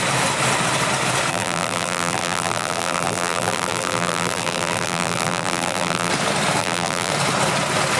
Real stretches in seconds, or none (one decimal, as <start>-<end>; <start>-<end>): 0.0-1.3; 6.1-6.6; 7.1-8.0